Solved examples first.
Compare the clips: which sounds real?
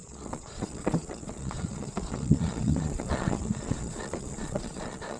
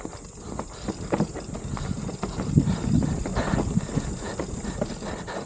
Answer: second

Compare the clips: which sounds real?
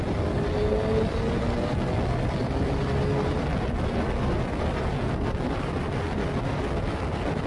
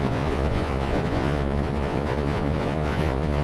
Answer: first